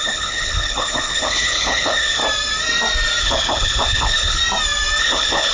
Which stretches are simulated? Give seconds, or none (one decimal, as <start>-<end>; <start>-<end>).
0.0-2.2; 3.2-4.4; 5.0-5.5